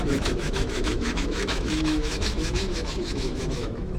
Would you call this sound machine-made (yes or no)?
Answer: yes